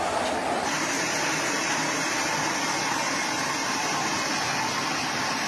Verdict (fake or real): real